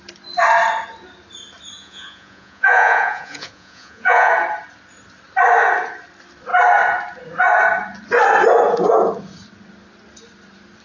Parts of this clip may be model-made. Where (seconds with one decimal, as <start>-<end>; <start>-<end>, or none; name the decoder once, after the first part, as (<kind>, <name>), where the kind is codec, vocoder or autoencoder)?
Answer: 1.8-4.3 (vocoder, Vocos)

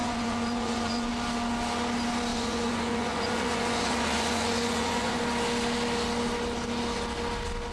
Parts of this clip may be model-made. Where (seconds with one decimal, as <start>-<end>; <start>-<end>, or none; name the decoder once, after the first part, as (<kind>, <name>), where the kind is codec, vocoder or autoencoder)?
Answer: 0.0-1.1 (vocoder, Vocos); 2.3-5.2

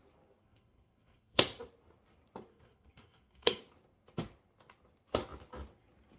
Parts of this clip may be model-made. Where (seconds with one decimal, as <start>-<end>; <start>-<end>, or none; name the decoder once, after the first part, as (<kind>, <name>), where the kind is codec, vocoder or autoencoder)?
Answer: 0.4-1.4 (codec, SNAC); 2.5-3.6

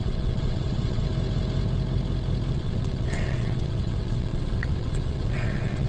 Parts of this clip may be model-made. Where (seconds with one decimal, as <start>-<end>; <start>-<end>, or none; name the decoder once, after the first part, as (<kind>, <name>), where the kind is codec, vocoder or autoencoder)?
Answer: 0.0-1.1 (vocoder, WaveNeXt); 2.5-5.9

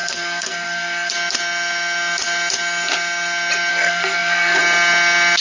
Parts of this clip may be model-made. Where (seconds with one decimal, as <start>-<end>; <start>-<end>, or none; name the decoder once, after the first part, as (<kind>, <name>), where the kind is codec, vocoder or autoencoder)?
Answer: 0.0-1.1 (codec, SNAC); 3.7-4.6

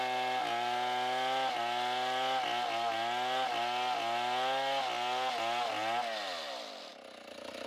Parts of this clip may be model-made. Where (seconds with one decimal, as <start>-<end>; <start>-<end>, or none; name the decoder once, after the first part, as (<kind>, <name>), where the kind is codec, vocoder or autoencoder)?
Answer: none

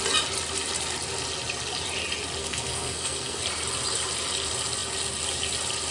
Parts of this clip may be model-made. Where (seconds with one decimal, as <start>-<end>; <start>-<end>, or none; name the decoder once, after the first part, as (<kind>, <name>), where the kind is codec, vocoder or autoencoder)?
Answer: 2.4-3.4 (codec, SNAC)

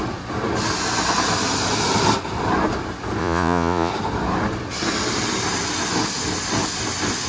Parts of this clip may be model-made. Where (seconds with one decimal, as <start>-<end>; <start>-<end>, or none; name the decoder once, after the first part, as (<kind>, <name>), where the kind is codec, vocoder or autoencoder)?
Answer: 3.2-3.9 (vocoder, Vocos)